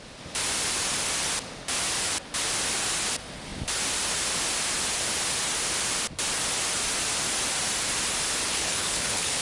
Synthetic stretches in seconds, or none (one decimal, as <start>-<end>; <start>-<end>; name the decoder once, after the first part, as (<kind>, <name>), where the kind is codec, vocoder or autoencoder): 8.5-9.4 (codec, HILCodec)